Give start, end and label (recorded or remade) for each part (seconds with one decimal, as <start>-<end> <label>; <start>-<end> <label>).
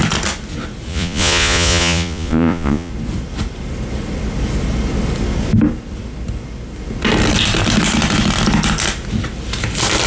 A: 0.0-0.9 recorded; 0.9-2.9 remade; 2.9-10.1 recorded